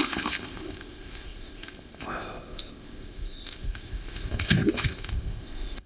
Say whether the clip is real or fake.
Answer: fake